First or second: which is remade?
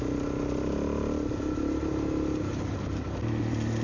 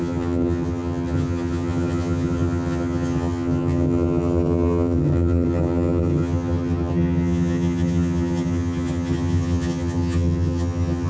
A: second